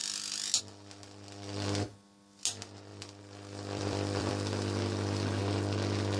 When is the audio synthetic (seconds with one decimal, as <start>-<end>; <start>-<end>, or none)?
2.9-4.3